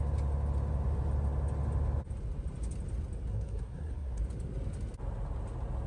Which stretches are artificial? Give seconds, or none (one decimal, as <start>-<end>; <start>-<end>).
3.3-4.2